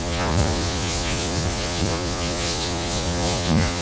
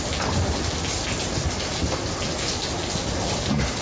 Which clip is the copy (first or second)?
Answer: first